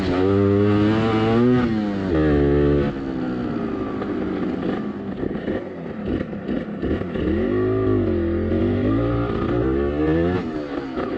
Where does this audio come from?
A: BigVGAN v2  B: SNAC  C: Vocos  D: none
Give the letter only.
D